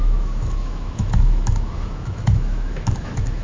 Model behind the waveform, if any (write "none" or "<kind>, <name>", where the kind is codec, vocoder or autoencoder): autoencoder, DAC-VAE